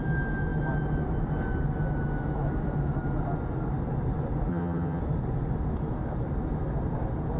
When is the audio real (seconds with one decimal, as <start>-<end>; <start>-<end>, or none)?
0.0-4.5; 5.0-7.4